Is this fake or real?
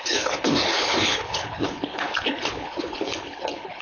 fake